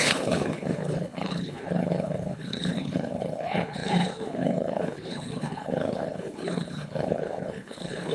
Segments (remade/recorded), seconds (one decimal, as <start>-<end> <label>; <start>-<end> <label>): 0.0-8.1 remade